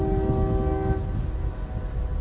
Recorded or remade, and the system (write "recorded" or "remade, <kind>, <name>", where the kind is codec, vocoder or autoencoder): recorded